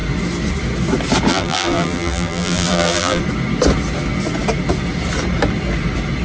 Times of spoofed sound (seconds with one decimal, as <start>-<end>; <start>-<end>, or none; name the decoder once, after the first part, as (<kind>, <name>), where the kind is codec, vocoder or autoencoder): 1.3-3.2 (vocoder, BigVGAN v2)